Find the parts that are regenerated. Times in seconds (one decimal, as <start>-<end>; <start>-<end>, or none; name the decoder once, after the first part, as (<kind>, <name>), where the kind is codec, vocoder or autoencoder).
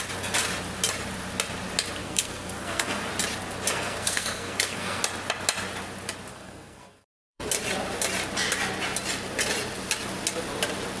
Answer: 2.0-3.1 (codec, SNAC); 3.7-5.0; 6.3-7.5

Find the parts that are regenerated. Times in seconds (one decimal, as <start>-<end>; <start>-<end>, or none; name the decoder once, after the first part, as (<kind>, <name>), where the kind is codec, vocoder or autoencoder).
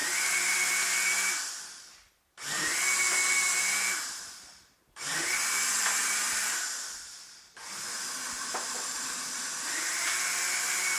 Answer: 6.0-7.5 (vocoder, BigVGAN v2); 8.2-11.0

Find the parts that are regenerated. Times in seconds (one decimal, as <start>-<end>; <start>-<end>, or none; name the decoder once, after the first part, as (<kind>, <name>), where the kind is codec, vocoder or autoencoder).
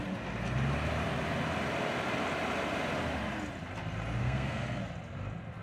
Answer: 4.2-4.8 (codec, SNAC)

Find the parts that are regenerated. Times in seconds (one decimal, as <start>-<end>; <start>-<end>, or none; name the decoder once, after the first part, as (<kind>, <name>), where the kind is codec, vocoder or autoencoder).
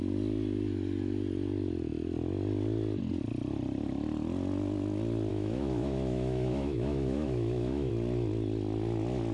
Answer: 5.3-7.9 (autoencoder, DAC-VAE)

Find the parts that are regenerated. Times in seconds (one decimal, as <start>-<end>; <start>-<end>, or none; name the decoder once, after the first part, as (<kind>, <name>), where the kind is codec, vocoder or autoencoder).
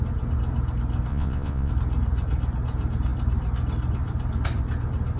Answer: 1.1-1.7 (vocoder, Vocos)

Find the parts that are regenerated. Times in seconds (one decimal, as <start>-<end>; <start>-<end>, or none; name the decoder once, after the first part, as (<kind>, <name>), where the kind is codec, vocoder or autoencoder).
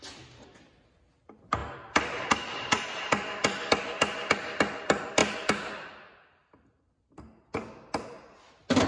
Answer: none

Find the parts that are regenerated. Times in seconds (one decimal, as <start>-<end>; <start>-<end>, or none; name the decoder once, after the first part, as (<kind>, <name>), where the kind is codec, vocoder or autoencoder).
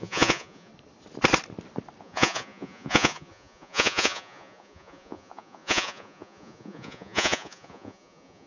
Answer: 0.0-0.7 (vocoder, Vocos); 2.0-8.5